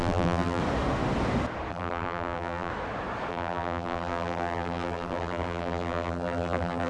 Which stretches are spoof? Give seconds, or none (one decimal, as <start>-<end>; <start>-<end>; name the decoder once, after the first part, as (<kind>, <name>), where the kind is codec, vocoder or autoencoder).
0.0-0.6 (vocoder, BigVGAN v2); 1.7-2.7; 3.3-6.9